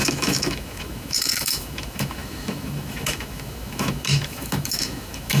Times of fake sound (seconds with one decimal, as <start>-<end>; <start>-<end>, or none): 0.0-5.4